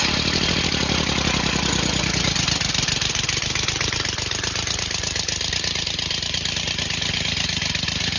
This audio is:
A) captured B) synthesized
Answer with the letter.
A